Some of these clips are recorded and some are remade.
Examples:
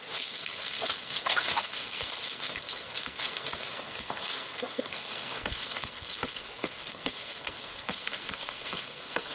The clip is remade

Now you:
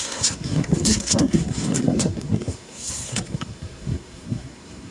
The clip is remade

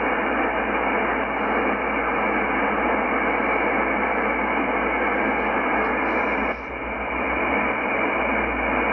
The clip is recorded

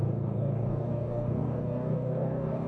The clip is remade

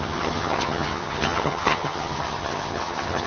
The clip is remade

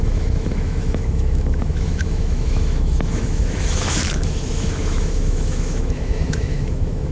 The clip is remade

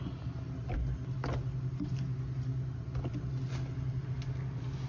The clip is recorded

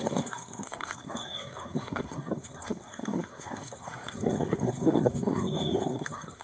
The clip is remade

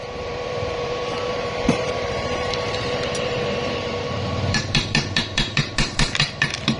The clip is remade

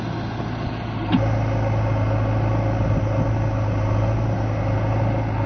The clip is recorded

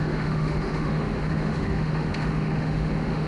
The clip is remade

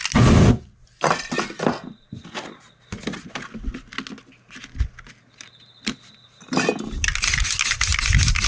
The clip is recorded